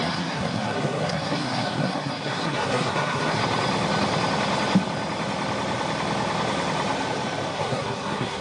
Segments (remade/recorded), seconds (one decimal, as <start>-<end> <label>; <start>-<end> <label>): 0.0-3.4 remade; 3.4-7.5 recorded; 7.5-8.4 remade